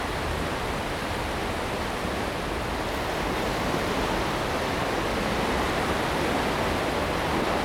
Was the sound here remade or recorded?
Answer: recorded